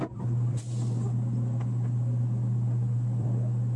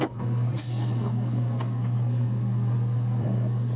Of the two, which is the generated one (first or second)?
second